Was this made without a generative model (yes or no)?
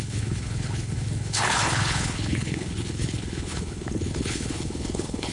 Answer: no